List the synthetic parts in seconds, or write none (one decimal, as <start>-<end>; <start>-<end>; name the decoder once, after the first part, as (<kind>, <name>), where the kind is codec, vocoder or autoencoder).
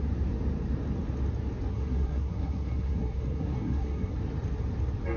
1.7-4.2 (codec, SNAC)